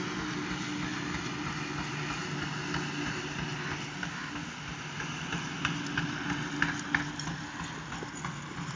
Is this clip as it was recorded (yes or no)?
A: yes